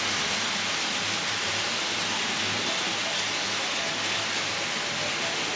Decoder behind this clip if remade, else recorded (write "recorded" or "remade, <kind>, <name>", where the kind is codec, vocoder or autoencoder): recorded